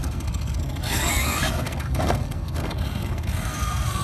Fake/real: fake